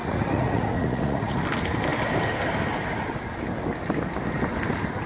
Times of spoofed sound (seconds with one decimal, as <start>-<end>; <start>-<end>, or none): 0.0-1.4